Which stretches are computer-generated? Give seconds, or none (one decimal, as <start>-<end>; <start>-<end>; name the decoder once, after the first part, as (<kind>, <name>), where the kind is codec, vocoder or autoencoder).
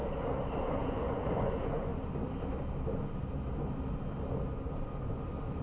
0.6-1.9 (vocoder, Vocos)